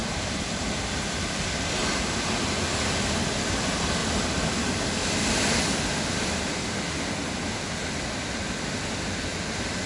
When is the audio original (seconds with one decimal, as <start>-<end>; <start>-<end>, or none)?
0.6-1.8; 2.3-9.9

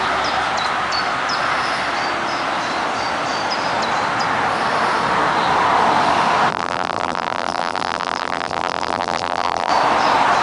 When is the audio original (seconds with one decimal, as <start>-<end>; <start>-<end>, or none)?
0.0-6.5; 9.7-10.4

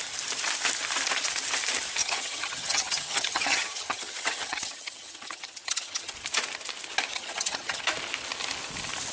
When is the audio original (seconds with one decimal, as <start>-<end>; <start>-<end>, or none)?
0.0-2.0; 6.1-7.1; 7.8-9.1